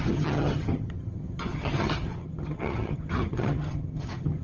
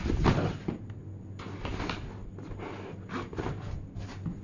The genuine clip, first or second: second